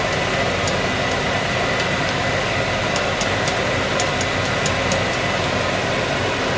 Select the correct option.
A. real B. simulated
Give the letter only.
A